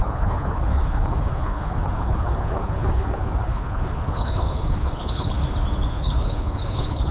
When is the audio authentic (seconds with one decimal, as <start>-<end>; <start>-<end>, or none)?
5.4-5.9